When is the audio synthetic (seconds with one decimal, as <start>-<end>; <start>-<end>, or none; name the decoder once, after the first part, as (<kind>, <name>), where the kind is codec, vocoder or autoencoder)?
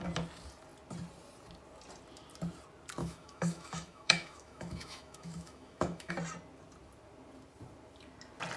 3.0-6.1 (autoencoder, DAC-VAE)